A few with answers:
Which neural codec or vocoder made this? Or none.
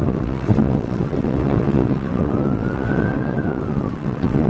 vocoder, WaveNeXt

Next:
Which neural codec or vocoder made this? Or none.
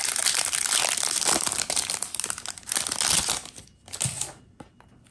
none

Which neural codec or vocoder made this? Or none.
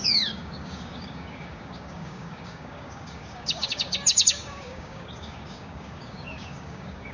codec, DAC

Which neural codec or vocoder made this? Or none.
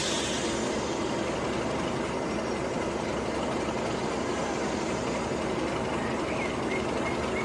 none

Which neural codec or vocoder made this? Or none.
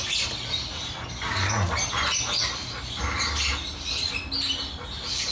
none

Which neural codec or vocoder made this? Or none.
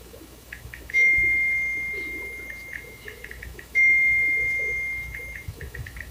autoencoder, DAC-VAE